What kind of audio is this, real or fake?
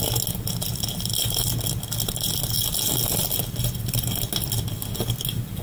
real